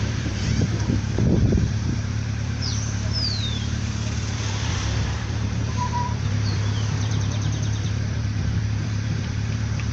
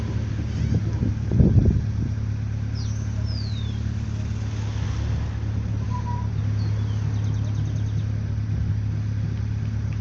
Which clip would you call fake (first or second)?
first